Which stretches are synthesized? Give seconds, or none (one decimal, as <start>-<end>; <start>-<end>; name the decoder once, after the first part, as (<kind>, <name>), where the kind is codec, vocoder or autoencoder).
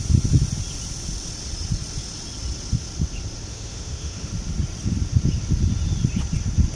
3.5-4.3 (autoencoder, DAC-VAE)